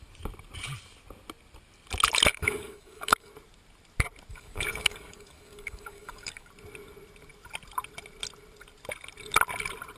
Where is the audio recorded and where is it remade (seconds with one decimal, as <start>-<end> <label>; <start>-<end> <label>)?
0.0-2.3 recorded; 2.3-3.3 remade; 3.3-4.3 recorded; 4.3-6.5 remade; 6.5-10.0 recorded